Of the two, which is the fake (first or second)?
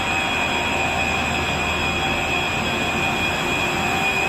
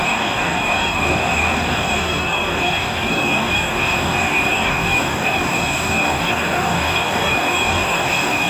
second